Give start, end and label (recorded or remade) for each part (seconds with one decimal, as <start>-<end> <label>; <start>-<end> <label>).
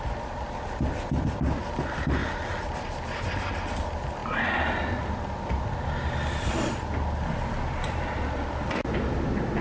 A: 0.0-9.6 recorded